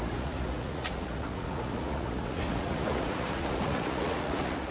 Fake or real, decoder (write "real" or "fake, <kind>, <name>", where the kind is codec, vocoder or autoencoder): fake, vocoder, Vocos